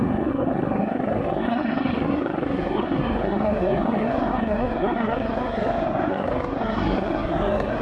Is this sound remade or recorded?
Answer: remade